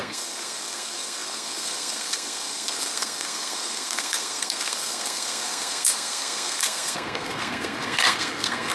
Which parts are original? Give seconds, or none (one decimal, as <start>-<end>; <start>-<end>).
none